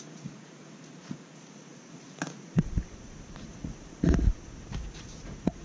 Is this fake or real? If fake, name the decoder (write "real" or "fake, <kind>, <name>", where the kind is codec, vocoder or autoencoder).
fake, vocoder, Vocos